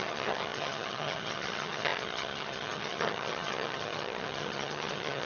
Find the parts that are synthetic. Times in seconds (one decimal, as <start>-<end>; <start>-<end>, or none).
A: 0.0-5.2